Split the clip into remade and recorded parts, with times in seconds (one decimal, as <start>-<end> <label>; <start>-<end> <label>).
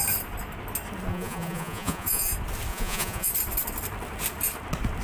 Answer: 0.0-1.1 recorded; 1.1-2.3 remade; 2.3-2.7 recorded; 2.7-3.3 remade; 3.3-5.0 recorded